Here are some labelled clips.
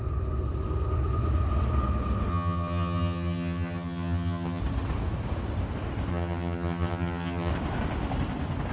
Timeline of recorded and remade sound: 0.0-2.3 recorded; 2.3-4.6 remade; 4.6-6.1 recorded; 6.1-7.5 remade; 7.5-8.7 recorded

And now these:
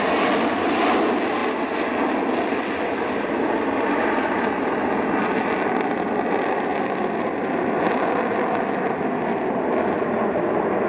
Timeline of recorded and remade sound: 0.0-10.9 recorded

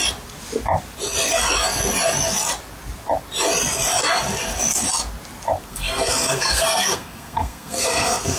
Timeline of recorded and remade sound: 0.0-5.7 recorded; 5.7-8.4 remade

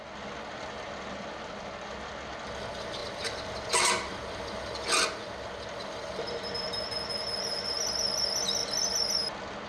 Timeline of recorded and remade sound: 0.0-9.7 recorded

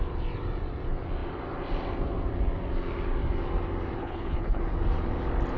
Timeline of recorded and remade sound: 0.0-4.0 recorded; 4.0-4.6 remade; 4.6-5.6 recorded

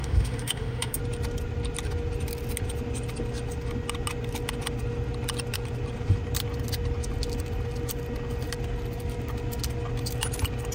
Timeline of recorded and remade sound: 0.0-1.0 remade; 1.0-10.7 recorded